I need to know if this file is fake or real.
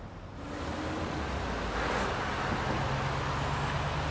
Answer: real